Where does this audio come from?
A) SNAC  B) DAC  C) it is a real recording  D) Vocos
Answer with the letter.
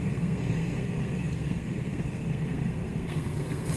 A